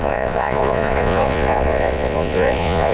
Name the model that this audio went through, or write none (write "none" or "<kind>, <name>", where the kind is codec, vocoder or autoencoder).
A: vocoder, Vocos